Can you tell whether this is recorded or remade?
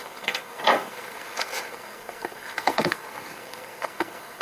remade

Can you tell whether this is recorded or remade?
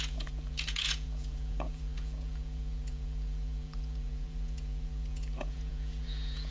remade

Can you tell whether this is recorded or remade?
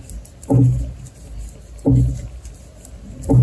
recorded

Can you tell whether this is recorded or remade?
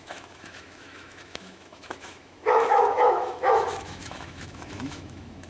remade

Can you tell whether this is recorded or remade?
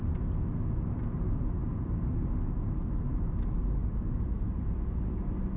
recorded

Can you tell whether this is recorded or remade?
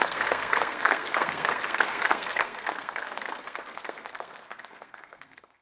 remade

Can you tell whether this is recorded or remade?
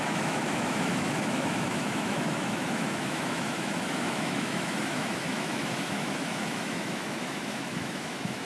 remade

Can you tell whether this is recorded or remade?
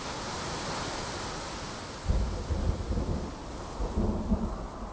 recorded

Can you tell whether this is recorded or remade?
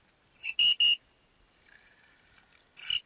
recorded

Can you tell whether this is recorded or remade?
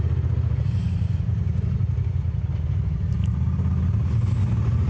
recorded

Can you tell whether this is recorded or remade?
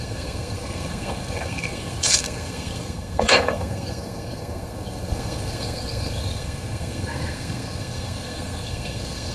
remade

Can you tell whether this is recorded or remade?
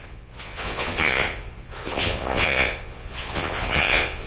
remade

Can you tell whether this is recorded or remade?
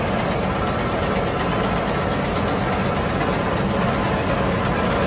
recorded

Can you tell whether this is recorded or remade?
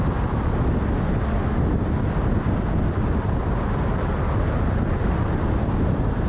recorded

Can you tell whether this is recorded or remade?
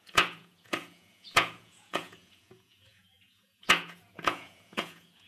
remade